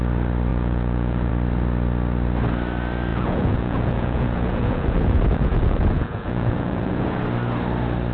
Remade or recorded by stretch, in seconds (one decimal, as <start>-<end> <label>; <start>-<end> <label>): 0.0-0.5 recorded; 0.5-1.3 remade; 1.3-3.1 recorded; 3.1-7.2 remade; 7.2-8.1 recorded